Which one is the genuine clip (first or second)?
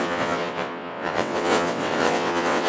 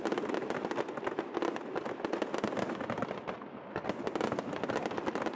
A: second